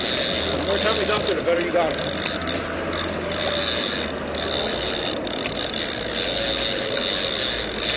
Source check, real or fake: real